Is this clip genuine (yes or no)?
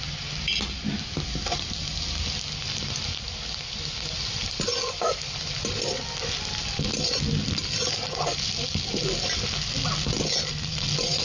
yes